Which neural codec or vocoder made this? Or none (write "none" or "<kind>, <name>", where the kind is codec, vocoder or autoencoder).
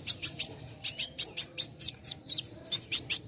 vocoder, BigVGAN v2